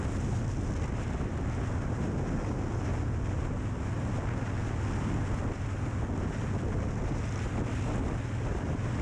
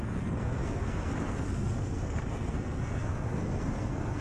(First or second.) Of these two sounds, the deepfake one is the second